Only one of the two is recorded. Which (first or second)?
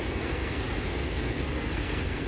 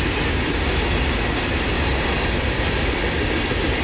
second